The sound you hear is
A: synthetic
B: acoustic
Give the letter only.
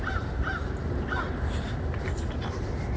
B